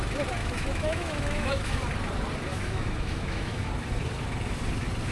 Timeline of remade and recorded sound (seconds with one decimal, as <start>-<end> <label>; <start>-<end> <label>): 0.0-0.4 recorded; 0.4-1.8 remade; 1.8-2.5 recorded; 2.5-3.7 remade; 3.7-5.1 recorded